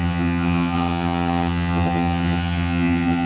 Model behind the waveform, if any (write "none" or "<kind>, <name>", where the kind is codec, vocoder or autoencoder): vocoder, HiFi-GAN